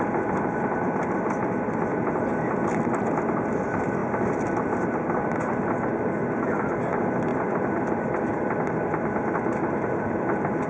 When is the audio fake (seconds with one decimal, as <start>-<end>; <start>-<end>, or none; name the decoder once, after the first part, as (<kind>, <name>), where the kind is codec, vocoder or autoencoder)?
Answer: none